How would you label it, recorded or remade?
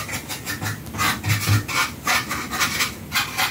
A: recorded